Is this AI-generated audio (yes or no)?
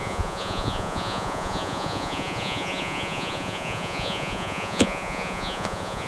yes